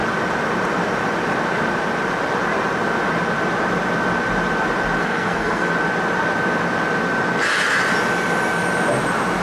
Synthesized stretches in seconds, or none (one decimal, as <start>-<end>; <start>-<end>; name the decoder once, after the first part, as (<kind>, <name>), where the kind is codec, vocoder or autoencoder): 5.0-5.7 (codec, SNAC)